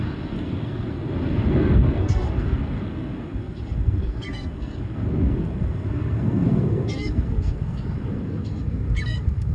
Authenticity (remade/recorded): remade